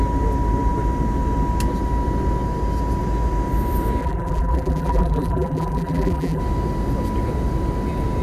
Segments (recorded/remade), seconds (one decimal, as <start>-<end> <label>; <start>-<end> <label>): 0.0-4.0 recorded; 4.0-6.4 remade; 6.4-8.2 recorded